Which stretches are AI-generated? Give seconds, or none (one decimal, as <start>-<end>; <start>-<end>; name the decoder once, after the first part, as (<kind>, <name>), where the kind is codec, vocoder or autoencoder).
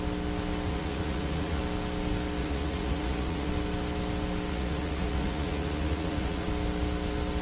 0.7-1.6 (vocoder, Vocos); 2.4-3.5; 4.5-6.5